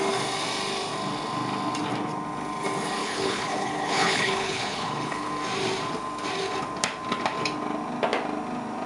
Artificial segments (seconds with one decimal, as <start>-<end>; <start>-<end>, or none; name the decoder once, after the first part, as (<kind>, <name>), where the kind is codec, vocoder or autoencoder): 3.0-5.3 (codec, HILCodec)